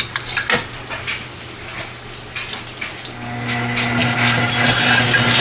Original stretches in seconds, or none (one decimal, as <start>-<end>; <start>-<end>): 0.0-5.4